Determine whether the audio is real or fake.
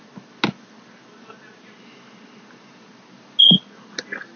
real